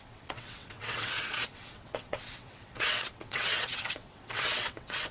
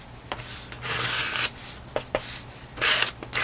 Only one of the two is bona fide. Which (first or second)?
second